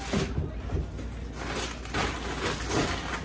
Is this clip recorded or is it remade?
recorded